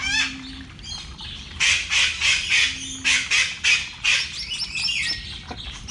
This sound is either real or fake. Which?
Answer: real